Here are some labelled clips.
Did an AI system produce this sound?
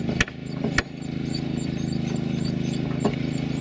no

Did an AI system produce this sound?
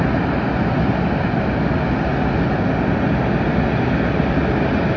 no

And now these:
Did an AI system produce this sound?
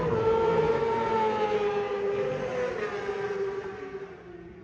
no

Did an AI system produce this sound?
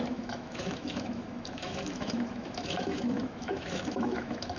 yes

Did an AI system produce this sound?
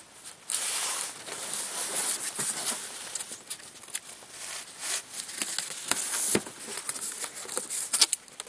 no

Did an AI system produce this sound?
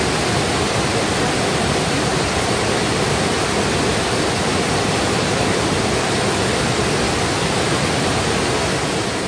no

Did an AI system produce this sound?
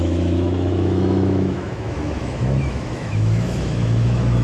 yes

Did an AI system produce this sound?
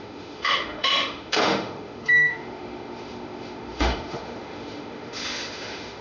yes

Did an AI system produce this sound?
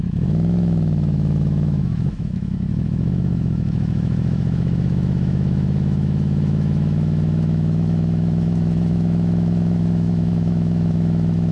yes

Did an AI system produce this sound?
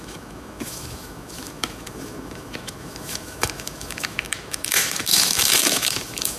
yes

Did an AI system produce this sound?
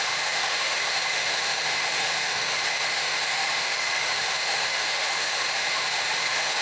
yes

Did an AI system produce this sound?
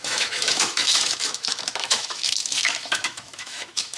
yes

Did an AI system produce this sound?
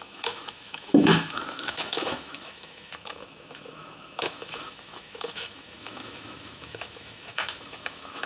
yes